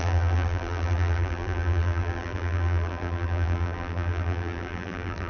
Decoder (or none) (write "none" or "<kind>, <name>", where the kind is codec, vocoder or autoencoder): vocoder, BigVGAN v2